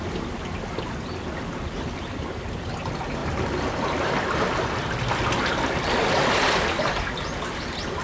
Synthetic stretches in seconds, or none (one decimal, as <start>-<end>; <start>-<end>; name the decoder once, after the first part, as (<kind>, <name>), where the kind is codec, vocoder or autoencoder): none